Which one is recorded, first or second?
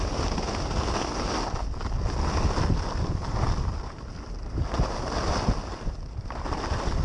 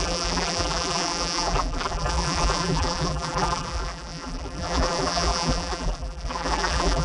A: first